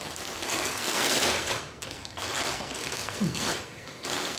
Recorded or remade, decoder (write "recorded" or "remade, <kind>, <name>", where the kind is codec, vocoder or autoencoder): remade, codec, SNAC